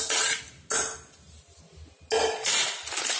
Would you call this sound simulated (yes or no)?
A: no